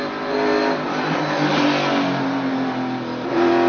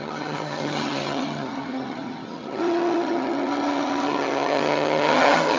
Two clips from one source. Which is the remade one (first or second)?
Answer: second